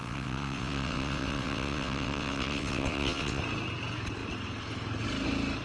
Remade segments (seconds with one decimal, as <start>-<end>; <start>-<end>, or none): 0.0-3.4